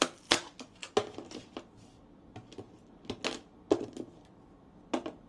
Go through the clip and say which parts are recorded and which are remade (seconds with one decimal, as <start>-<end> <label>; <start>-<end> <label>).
0.0-5.3 recorded